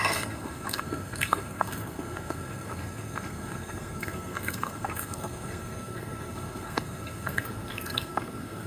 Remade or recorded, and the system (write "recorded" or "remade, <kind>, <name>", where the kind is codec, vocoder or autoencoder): remade, codec, SNAC